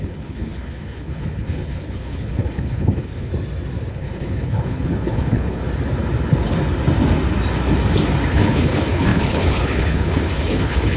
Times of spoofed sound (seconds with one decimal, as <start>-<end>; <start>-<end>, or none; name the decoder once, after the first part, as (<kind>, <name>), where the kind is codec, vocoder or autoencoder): 0.0-3.3 (codec, HILCodec); 3.9-5.6; 8.3-11.0

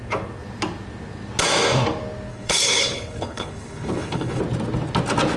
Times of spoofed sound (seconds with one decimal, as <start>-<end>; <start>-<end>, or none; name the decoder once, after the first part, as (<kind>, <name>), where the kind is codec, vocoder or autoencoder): 2.3-4.4 (codec, HILCodec)

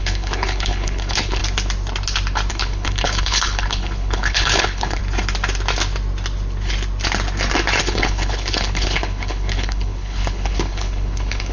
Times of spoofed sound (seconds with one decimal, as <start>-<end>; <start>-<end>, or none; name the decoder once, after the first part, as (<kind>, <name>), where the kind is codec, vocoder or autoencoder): 0.0-1.4 (codec, HILCodec); 2.5-5.0; 7.8-11.5

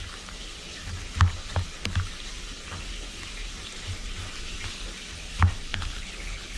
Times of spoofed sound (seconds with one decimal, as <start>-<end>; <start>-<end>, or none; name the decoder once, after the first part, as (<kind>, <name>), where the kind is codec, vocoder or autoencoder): 5.7-6.6 (codec, HILCodec)

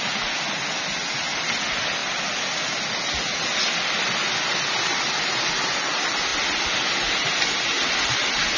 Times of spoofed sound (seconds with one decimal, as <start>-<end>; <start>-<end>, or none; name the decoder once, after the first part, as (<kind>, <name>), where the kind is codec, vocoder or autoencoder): none

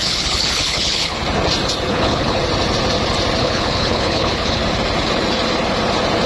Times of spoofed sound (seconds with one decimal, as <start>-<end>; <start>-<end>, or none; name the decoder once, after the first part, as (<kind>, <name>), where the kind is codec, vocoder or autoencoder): 0.0-1.2 (codec, HILCodec); 1.9-2.4; 3.4-4.6